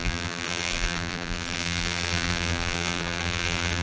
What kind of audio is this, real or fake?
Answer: fake